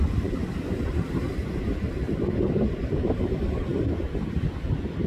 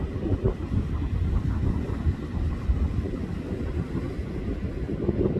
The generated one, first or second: first